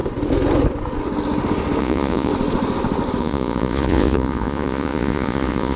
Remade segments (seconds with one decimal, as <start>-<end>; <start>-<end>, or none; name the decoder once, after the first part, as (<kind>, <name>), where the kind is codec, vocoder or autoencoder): 1.8-2.3 (vocoder, Vocos); 3.2-5.8